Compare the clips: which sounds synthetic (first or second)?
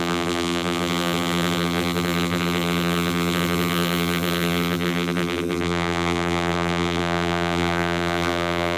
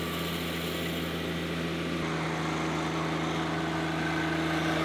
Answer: first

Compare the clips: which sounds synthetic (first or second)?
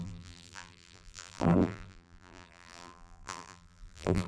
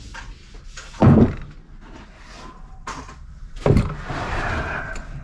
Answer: first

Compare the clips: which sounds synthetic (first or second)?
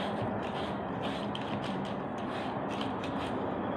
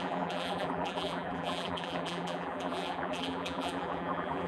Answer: second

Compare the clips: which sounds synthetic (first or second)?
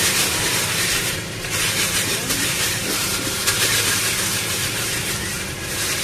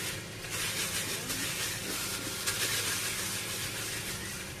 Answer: first